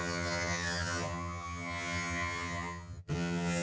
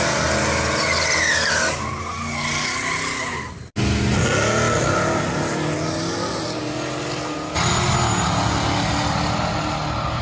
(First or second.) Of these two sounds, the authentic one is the second